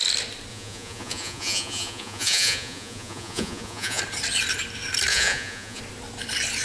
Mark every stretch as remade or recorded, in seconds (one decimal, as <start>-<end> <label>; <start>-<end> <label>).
0.0-0.5 recorded; 0.5-4.0 remade; 4.0-5.1 recorded; 5.1-5.8 remade; 5.8-6.6 recorded